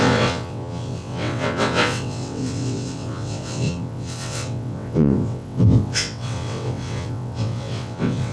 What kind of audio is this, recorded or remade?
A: remade